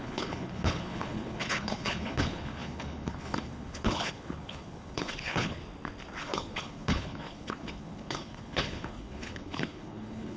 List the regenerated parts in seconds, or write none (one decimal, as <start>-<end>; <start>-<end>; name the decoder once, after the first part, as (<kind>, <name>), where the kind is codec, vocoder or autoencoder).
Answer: 0.0-5.6 (codec, HILCodec); 6.2-10.4